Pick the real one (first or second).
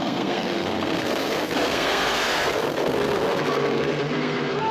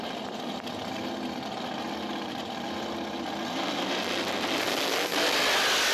second